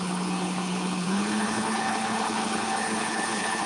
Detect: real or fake fake